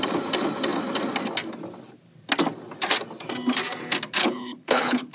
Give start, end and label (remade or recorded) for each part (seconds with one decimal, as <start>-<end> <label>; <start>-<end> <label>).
0.0-4.2 recorded; 4.2-5.1 remade